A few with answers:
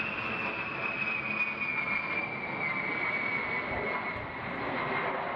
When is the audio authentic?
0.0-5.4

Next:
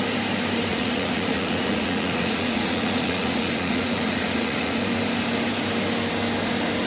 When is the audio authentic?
0.0-0.7; 4.8-6.9

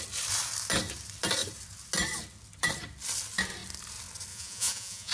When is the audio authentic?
0.0-4.3

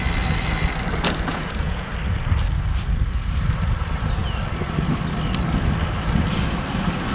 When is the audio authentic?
0.0-1.3; 1.9-7.1